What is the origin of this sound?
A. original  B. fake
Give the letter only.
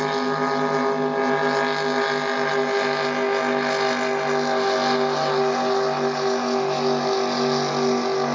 A